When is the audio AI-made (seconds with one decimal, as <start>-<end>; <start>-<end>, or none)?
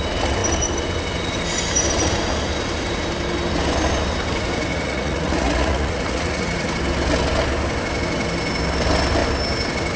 4.7-6.7